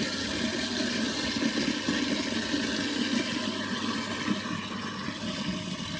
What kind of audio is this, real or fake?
real